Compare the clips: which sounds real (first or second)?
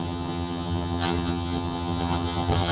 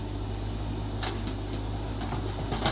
second